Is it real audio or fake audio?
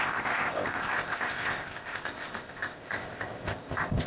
fake